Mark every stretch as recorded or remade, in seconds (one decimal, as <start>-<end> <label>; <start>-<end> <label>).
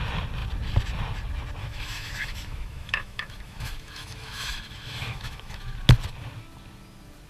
0.0-1.6 recorded; 1.6-5.6 remade; 5.6-7.3 recorded